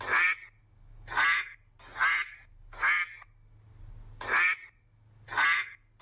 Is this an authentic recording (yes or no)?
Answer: yes